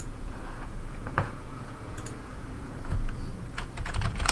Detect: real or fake fake